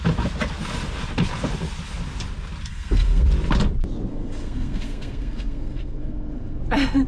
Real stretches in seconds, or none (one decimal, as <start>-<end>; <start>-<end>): 0.0-2.7; 3.3-4.1; 6.6-7.1